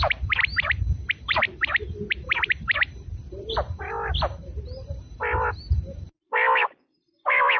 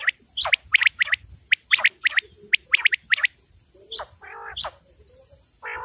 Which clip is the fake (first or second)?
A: first